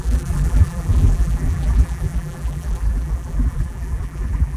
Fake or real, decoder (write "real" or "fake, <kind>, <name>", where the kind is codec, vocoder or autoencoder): fake, vocoder, BigVGAN v2